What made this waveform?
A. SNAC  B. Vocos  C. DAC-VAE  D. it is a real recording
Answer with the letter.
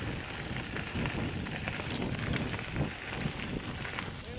D